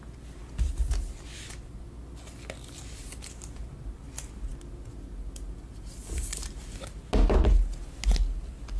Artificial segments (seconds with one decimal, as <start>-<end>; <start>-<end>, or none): none